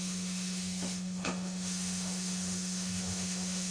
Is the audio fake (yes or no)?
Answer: yes